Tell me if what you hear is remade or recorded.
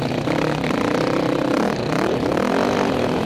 recorded